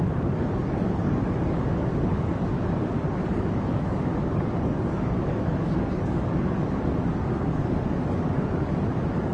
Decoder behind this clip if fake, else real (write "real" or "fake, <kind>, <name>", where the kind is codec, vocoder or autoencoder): fake, codec, DAC